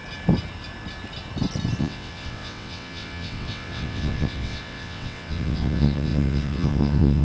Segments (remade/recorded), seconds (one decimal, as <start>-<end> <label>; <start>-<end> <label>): 0.0-1.8 recorded; 1.8-7.2 remade